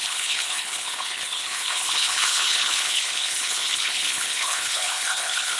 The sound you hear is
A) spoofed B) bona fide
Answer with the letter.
A